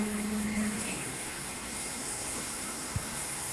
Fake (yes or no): yes